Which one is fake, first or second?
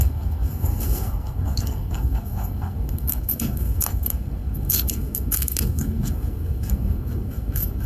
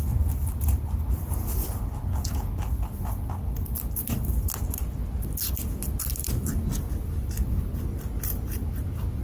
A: first